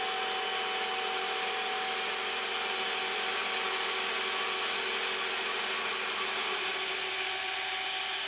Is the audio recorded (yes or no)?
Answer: yes